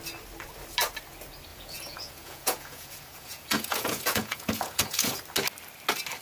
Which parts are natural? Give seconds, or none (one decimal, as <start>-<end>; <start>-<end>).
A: 0.0-1.5; 5.2-6.2

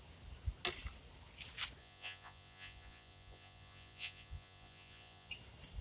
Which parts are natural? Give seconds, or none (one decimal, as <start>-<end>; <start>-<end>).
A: 0.0-1.8; 5.3-5.8